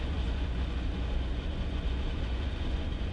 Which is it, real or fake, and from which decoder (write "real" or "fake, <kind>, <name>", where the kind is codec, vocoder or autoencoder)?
fake, vocoder, Vocos